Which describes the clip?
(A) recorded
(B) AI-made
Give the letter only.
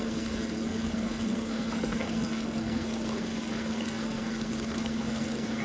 B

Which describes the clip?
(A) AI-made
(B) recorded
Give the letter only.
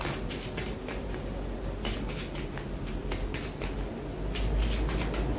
B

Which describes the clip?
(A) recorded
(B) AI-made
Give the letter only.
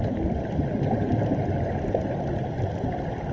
A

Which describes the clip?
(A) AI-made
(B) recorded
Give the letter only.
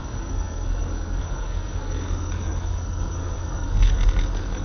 A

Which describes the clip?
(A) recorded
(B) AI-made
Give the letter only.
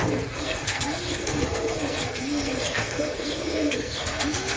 B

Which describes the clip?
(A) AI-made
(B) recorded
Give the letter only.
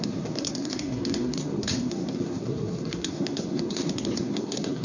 A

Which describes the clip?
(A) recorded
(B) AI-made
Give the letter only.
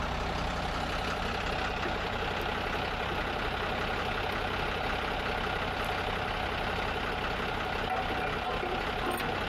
A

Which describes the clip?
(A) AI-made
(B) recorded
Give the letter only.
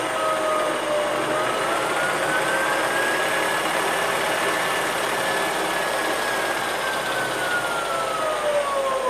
B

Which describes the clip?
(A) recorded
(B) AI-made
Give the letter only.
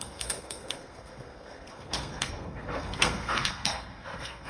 B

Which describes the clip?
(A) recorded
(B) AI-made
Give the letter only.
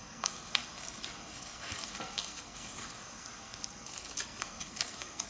B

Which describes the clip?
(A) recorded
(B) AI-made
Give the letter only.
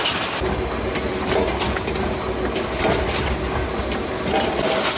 A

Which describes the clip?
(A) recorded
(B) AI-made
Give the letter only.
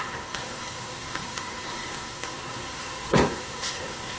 B